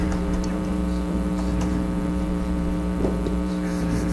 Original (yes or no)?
no